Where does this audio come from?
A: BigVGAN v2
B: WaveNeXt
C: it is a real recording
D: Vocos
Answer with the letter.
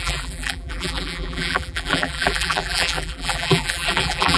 A